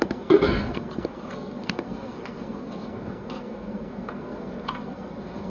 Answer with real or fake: fake